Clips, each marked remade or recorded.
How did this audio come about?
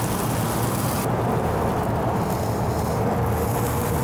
recorded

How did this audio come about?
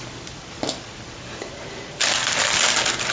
recorded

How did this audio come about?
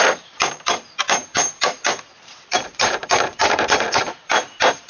remade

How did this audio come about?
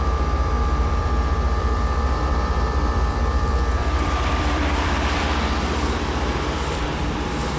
remade